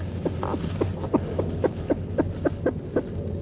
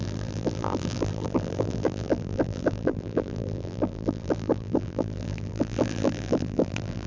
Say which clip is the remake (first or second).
second